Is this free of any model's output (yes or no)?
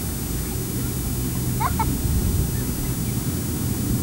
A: yes